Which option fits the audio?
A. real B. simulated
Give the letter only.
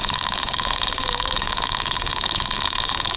B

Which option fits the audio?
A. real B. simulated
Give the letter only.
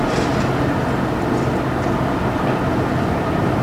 A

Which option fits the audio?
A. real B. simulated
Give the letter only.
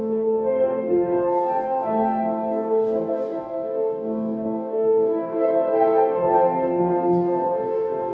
B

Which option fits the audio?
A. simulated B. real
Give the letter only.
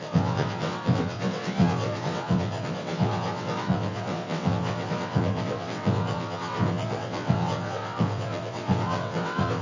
A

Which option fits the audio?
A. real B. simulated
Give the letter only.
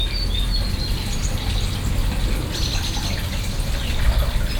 A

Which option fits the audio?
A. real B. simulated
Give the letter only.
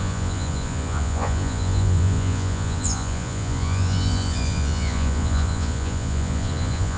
B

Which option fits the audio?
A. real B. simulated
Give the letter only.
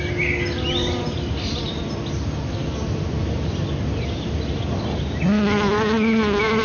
A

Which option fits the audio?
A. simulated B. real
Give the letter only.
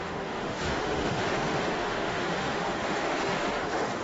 A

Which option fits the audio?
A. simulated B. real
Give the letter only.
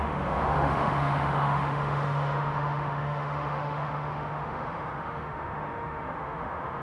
A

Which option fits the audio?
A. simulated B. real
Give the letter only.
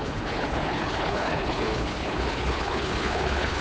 A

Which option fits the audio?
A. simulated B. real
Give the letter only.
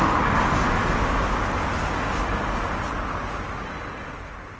B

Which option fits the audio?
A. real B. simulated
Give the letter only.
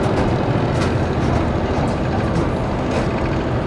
A